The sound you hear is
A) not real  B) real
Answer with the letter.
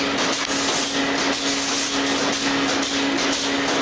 B